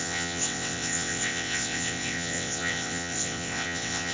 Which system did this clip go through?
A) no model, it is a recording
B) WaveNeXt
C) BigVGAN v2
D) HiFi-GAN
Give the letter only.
B